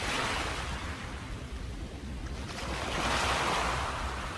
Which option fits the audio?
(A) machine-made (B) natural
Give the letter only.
B